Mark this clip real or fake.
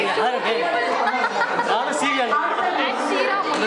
real